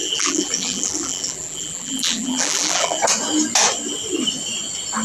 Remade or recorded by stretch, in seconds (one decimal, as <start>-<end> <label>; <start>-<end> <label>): 0.0-3.0 remade; 3.0-5.0 recorded